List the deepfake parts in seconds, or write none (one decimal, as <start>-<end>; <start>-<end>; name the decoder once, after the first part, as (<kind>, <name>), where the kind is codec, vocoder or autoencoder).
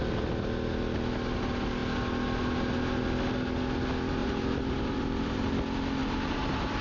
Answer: 4.2-5.5 (vocoder, BigVGAN v2); 6.0-6.8